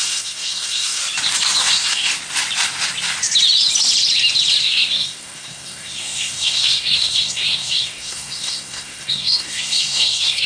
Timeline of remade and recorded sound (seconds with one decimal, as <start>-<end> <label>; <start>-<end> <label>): 0.0-1.0 remade; 1.0-1.7 recorded; 1.7-2.1 remade; 2.1-4.6 recorded; 4.6-10.5 remade

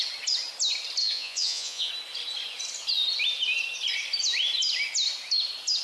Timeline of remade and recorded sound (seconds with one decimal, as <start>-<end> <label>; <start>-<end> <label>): 0.0-1.0 recorded; 1.0-1.9 remade; 1.9-5.8 recorded

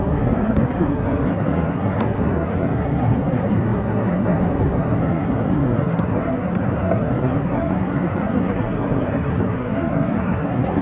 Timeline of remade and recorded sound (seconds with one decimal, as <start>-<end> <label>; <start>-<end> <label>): 0.0-10.8 remade

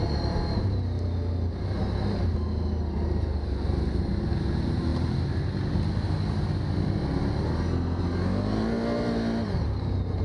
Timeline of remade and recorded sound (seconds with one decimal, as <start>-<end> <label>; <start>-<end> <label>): 0.0-10.2 recorded

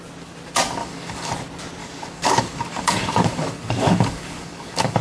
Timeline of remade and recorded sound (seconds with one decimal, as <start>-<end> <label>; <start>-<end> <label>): 0.0-0.8 recorded; 0.8-1.3 remade; 1.3-1.8 recorded; 1.8-5.0 remade

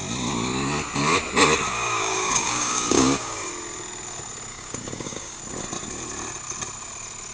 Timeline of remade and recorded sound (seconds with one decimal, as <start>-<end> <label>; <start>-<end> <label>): 0.0-1.7 recorded; 1.7-3.5 remade; 3.5-4.5 recorded; 4.5-5.4 remade; 5.4-7.3 recorded

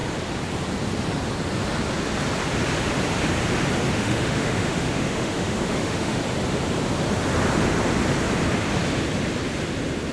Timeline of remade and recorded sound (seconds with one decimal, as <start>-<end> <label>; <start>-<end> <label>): 0.0-3.9 recorded; 3.9-6.2 remade; 6.2-10.1 recorded

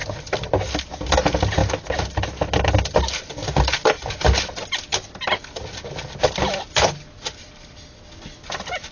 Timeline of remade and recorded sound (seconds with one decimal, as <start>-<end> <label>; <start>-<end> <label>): 0.0-8.9 recorded